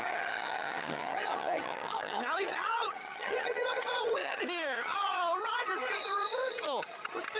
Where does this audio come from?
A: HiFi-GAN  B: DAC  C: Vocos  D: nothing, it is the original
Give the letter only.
A